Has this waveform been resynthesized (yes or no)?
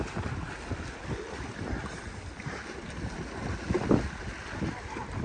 no